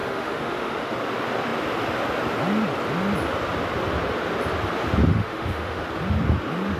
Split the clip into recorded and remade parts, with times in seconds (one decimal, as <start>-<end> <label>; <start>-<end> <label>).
0.0-0.9 remade; 0.9-5.1 recorded; 5.1-5.8 remade; 5.8-6.8 recorded